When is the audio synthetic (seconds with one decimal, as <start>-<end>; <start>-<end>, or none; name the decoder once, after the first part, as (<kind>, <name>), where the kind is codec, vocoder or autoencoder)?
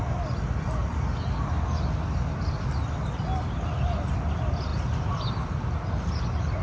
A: none